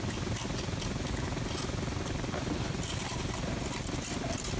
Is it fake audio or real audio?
real